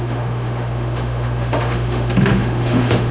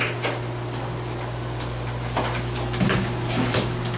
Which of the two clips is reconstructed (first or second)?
first